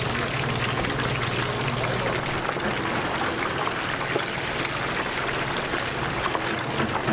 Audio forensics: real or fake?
real